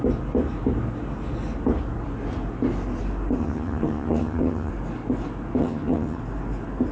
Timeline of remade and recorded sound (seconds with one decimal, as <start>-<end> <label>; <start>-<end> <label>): 0.0-3.4 recorded; 3.4-4.7 remade; 4.7-5.6 recorded; 5.6-6.2 remade; 6.2-6.9 recorded